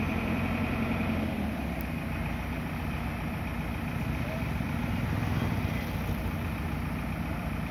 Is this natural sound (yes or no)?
yes